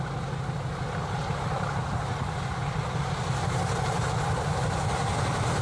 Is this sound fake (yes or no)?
no